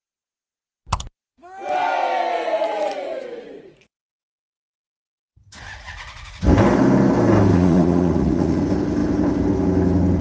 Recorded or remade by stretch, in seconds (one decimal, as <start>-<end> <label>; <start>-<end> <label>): 0.0-2.3 recorded; 2.3-6.4 remade; 6.4-7.5 recorded; 7.5-8.6 remade; 8.6-10.2 recorded